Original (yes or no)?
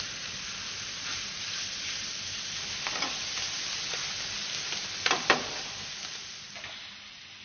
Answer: yes